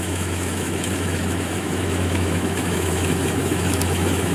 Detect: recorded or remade remade